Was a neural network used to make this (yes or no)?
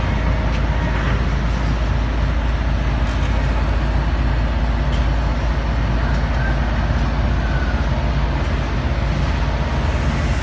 no